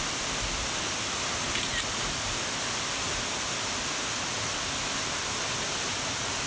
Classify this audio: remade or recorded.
recorded